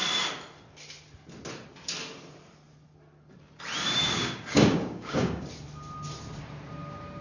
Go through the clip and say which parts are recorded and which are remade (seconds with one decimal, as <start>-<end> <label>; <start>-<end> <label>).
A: 0.0-4.0 recorded; 4.0-5.5 remade; 5.5-7.2 recorded